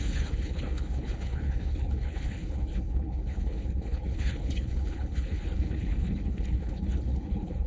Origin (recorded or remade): remade